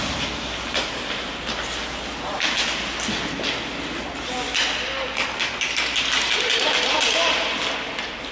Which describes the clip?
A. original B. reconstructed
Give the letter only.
A